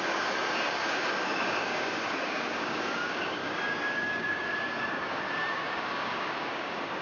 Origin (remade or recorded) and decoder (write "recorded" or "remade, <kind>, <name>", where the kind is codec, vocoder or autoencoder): remade, codec, DAC